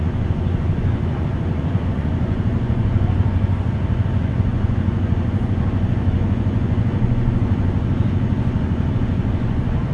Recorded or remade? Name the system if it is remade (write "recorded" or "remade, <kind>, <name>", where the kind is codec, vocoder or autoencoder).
remade, vocoder, Vocos